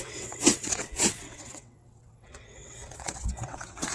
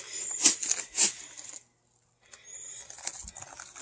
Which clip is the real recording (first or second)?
second